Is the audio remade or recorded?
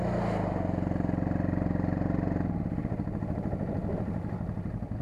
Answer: recorded